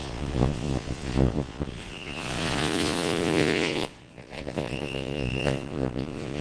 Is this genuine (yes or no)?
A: no